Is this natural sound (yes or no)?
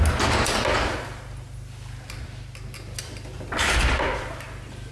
yes